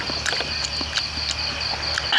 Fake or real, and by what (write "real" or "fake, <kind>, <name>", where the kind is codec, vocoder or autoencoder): real